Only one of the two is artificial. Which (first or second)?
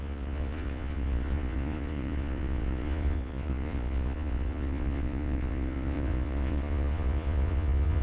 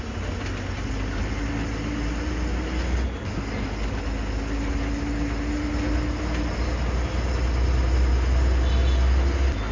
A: first